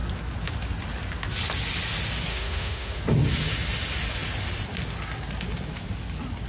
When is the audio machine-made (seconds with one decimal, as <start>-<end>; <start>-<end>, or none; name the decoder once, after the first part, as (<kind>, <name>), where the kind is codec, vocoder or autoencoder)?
2.3-3.0 (autoencoder, DAC-VAE)